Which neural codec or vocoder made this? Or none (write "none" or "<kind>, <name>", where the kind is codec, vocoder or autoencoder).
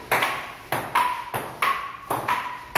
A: none